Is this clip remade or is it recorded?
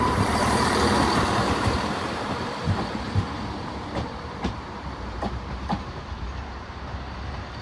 remade